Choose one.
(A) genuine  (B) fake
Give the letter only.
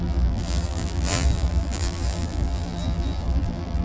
B